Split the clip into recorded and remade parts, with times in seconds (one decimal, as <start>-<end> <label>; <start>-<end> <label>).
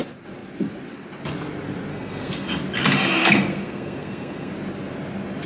0.0-1.9 recorded; 1.9-2.6 remade; 2.6-3.2 recorded; 3.2-4.5 remade; 4.5-5.5 recorded